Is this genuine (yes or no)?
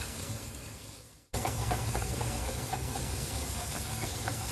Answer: no